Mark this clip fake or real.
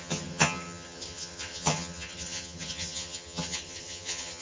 fake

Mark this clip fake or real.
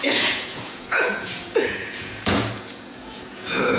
fake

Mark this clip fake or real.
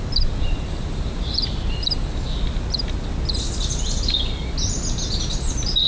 real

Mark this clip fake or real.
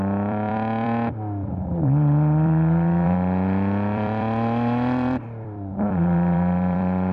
fake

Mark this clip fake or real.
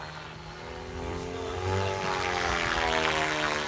real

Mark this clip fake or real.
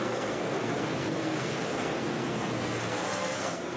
fake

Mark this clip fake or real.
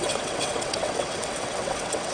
fake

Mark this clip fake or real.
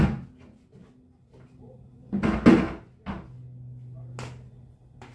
real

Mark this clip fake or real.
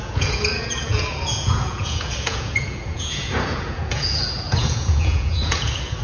fake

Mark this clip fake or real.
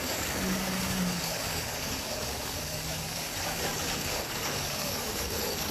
fake